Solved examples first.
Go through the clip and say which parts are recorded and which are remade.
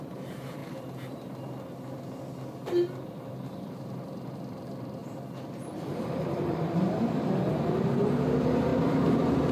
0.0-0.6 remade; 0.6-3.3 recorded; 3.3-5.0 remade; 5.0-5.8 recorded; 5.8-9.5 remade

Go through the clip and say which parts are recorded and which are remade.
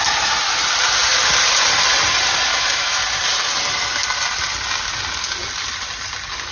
0.0-2.5 recorded; 2.5-3.0 remade; 3.0-6.5 recorded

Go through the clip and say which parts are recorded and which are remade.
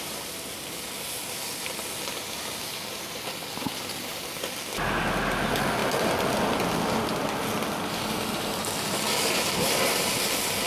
0.0-10.7 recorded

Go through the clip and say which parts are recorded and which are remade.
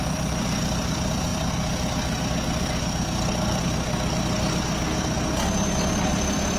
0.0-6.6 recorded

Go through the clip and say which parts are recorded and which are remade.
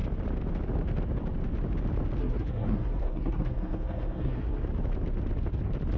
0.0-2.2 recorded; 2.2-4.6 remade; 4.6-6.0 recorded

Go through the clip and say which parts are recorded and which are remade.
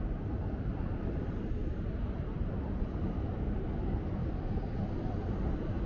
0.0-5.9 recorded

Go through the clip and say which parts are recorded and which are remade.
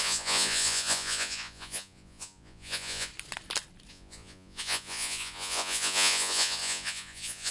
0.0-3.1 remade; 3.1-3.9 recorded; 3.9-7.5 remade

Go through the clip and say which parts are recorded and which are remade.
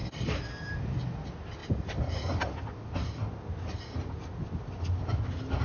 0.0-0.8 remade; 0.8-1.6 recorded; 1.6-2.4 remade; 2.4-5.6 recorded